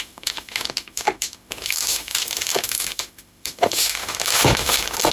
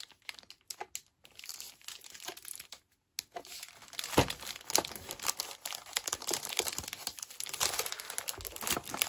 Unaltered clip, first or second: second